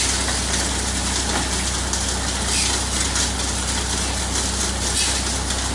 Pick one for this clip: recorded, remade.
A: recorded